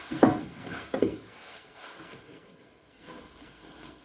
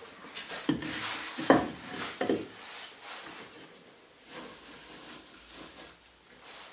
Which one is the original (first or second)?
second